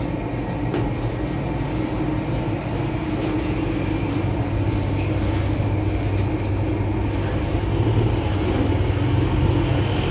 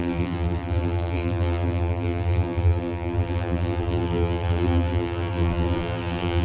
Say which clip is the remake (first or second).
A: second